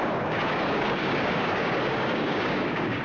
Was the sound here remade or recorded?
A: remade